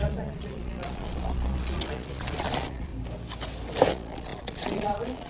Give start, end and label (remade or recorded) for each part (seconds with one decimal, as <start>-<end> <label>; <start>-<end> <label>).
0.0-2.9 remade; 2.9-3.9 recorded; 3.9-5.3 remade